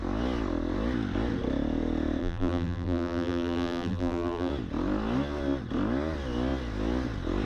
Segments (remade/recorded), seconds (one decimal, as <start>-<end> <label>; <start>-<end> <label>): 0.0-2.2 recorded; 2.2-4.5 remade; 4.5-7.5 recorded